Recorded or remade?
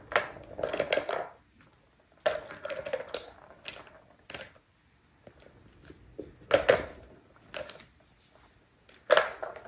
recorded